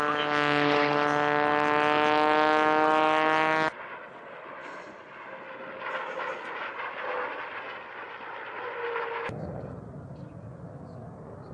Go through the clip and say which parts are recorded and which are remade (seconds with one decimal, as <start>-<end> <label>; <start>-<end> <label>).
0.0-11.5 recorded